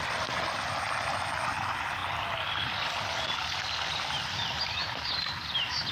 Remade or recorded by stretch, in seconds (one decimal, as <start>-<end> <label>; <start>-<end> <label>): 0.0-4.8 recorded; 4.8-5.9 remade